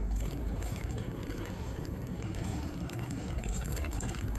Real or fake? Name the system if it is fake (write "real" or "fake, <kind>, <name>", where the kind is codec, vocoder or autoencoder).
fake, codec, SNAC